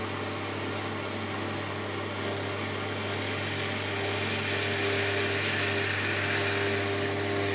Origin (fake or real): real